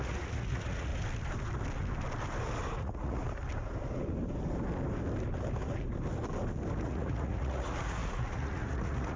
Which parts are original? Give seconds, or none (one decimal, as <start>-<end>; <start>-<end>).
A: 0.9-2.8; 3.2-6.8